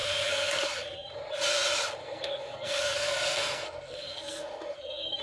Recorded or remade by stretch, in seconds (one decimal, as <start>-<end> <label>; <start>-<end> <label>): 0.0-0.6 remade; 0.6-2.0 recorded; 2.0-5.2 remade

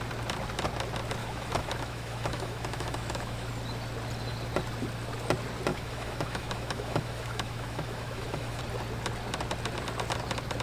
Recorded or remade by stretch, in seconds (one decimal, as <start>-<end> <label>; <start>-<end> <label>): 0.0-1.2 recorded; 1.2-3.5 remade; 3.5-5.7 recorded; 5.7-8.6 remade; 8.6-10.6 recorded

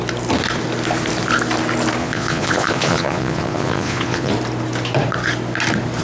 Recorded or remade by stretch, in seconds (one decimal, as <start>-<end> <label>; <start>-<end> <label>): 0.0-2.0 recorded; 2.0-4.3 remade; 4.3-6.0 recorded